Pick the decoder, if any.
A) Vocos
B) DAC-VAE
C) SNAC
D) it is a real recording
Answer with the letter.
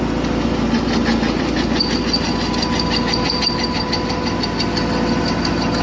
D